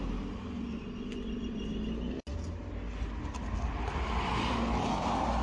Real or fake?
real